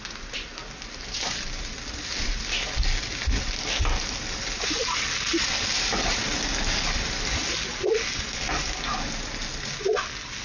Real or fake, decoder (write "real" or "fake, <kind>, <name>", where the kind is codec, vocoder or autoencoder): real